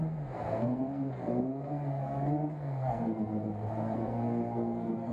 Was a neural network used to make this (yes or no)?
yes